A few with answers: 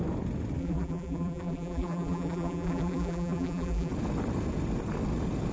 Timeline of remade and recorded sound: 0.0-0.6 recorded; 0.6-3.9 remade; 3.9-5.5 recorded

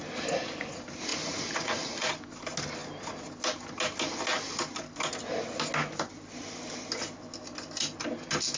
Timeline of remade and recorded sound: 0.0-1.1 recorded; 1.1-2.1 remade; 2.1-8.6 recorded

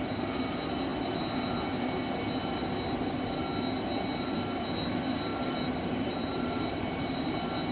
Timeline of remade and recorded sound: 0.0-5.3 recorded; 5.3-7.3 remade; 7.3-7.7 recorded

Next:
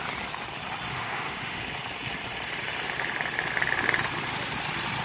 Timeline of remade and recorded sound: 0.0-0.9 recorded; 0.9-1.6 remade; 1.6-5.0 recorded

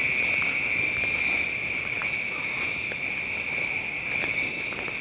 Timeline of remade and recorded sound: 0.0-2.0 recorded; 2.0-2.7 remade; 2.7-5.0 recorded

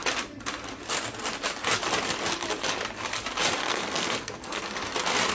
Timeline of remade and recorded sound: 0.0-3.6 recorded; 3.6-4.6 remade; 4.6-5.3 recorded